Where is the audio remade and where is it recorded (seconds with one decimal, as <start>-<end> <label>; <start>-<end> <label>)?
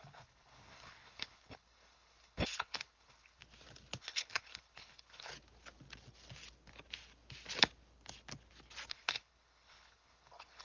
0.0-3.4 remade; 3.4-4.0 recorded; 4.0-5.3 remade; 5.3-8.9 recorded; 8.9-10.6 remade